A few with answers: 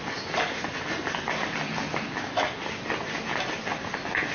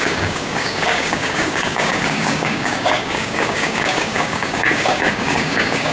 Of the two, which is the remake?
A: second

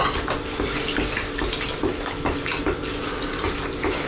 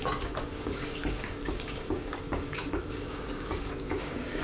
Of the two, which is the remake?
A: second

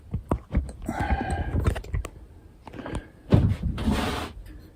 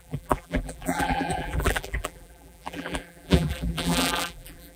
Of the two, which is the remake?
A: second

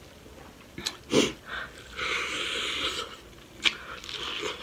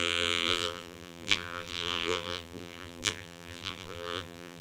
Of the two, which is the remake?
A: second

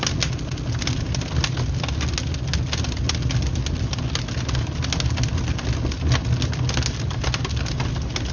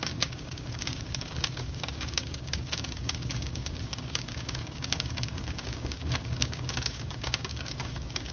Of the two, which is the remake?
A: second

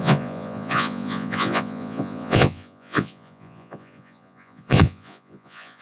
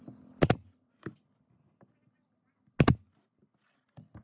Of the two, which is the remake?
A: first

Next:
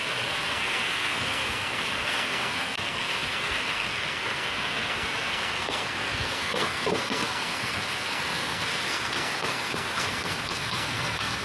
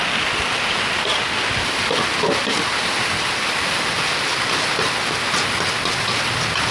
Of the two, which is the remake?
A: first